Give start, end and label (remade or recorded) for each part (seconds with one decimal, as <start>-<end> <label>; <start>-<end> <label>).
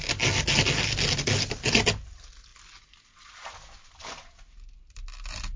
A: 0.0-5.6 recorded